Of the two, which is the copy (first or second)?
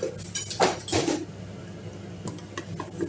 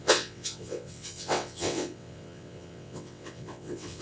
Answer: second